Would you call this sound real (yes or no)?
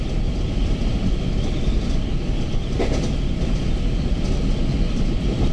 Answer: yes